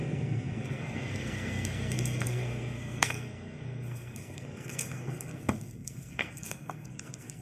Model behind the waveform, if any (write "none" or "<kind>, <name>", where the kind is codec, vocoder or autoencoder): codec, SNAC